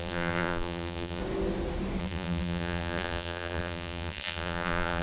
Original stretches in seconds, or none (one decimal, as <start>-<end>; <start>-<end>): 1.2-2.0